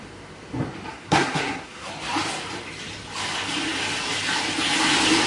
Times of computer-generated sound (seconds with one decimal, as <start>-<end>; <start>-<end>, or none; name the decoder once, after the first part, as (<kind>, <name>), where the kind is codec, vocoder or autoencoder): 0.9-1.9 (codec, SNAC)